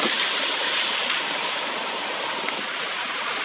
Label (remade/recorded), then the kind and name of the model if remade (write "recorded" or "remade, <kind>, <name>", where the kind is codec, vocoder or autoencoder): recorded